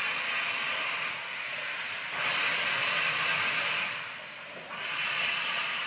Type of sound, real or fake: real